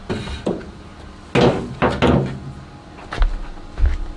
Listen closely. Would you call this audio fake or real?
real